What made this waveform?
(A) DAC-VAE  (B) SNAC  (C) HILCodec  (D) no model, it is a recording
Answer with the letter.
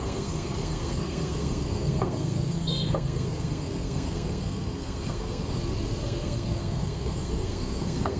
B